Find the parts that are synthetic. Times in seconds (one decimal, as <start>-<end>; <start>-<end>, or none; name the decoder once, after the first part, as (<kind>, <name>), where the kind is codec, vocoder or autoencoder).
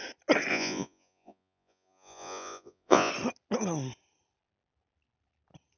0.5-3.1 (vocoder, Vocos)